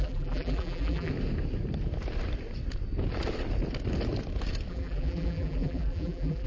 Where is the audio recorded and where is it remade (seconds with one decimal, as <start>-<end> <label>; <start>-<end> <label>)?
0.0-1.1 remade; 1.1-4.7 recorded; 4.7-6.5 remade